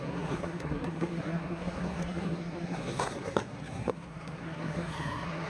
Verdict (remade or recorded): remade